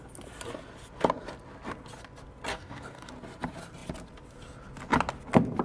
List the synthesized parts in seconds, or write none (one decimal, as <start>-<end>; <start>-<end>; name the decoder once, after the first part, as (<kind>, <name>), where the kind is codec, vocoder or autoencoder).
2.5-3.1 (codec, DAC)